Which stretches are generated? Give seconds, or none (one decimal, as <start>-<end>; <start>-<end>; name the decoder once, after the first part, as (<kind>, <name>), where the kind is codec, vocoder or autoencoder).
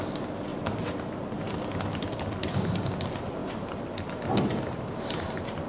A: 0.5-2.4 (vocoder, BigVGAN v2)